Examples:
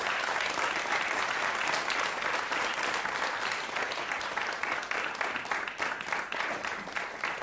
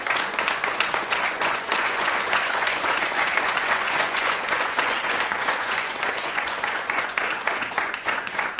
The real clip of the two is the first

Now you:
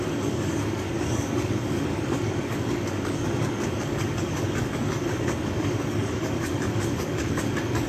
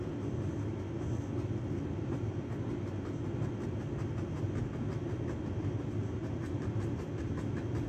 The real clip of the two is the second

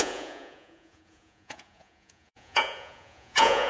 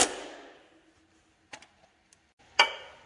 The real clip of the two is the second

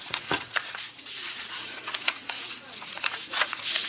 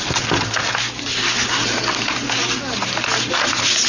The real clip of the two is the second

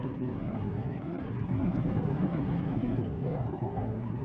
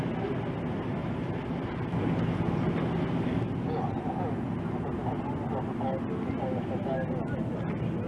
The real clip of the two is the second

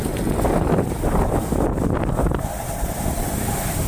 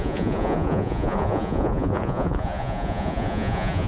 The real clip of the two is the first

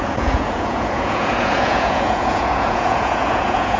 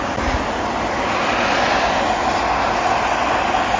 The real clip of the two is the second